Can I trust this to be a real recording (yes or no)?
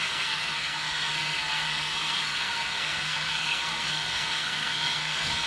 no